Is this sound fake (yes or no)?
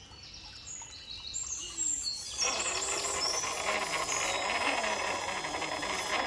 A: no